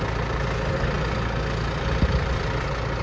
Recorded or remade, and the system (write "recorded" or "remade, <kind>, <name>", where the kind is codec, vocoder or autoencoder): recorded